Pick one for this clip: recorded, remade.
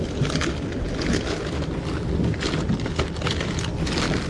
recorded